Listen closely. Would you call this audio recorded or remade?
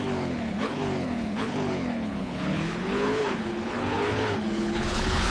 remade